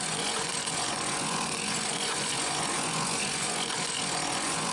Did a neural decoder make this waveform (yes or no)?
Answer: yes